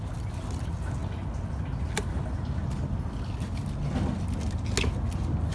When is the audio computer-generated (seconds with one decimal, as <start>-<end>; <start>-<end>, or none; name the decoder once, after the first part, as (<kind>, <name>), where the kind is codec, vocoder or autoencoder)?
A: none